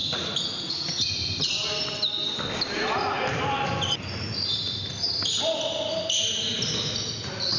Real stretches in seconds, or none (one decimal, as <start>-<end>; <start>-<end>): 0.0-7.6